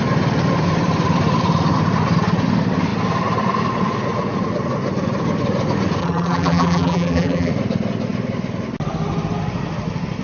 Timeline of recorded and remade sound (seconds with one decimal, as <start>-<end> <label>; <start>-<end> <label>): 0.0-6.0 recorded; 6.0-7.5 remade; 7.5-10.2 recorded